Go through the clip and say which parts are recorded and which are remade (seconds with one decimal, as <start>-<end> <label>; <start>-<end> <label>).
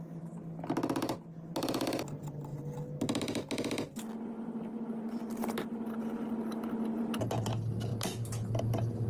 0.0-9.1 recorded